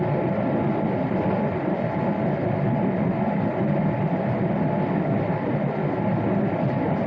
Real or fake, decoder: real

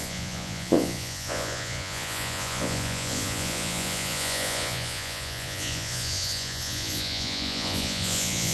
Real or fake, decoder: fake, vocoder, Vocos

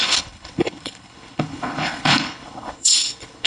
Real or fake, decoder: fake, codec, HILCodec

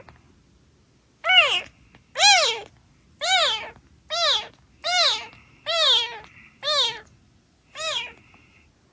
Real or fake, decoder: real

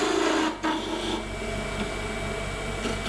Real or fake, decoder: real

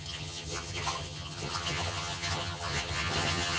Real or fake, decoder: fake, vocoder, HiFi-GAN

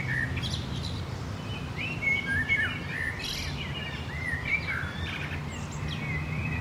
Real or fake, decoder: real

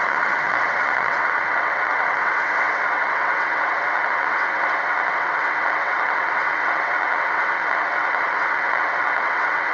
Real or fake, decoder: fake, vocoder, WaveNeXt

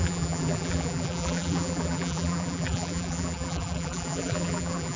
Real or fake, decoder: fake, vocoder, BigVGAN v2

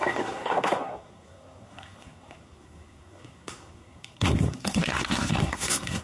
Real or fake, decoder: fake, codec, SNAC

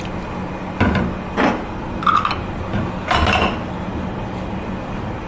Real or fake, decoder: real